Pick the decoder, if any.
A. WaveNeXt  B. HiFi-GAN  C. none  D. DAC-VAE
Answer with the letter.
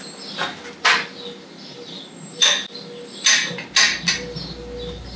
C